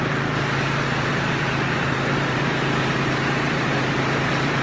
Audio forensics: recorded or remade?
remade